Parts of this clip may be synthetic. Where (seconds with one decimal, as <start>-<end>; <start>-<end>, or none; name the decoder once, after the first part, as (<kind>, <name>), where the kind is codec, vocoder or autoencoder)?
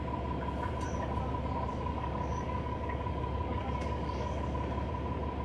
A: 1.7-4.9 (codec, DAC)